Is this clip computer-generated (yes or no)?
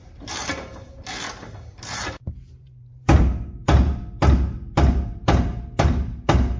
yes